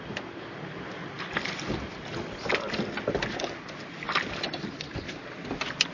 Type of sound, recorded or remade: recorded